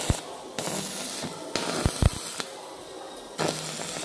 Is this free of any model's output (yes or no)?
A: yes